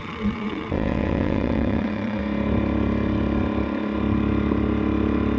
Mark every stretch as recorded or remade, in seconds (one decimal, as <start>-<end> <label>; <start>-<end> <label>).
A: 0.0-2.2 remade; 2.2-5.4 recorded